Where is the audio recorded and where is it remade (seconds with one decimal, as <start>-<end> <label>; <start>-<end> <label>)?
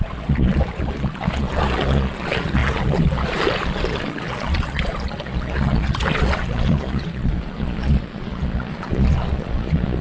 0.0-10.0 remade